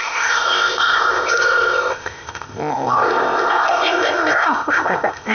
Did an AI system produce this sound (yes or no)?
yes